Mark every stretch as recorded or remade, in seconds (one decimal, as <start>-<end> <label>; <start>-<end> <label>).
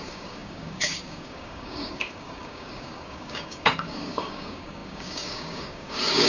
0.0-6.3 remade